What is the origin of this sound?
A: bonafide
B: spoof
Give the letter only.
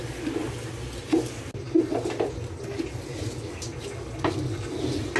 A